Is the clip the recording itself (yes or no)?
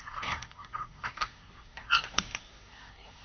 no